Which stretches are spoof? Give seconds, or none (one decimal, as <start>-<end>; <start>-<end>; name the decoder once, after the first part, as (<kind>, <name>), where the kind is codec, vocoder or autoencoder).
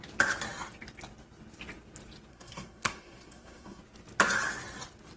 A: 2.3-3.8 (codec, SNAC)